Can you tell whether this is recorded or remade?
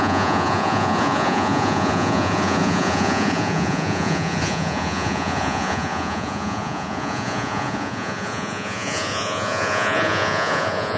remade